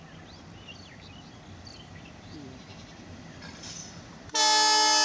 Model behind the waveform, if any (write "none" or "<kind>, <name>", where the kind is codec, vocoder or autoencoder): none